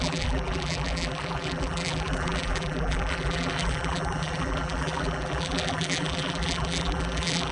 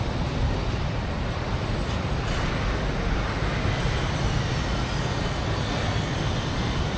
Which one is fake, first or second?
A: first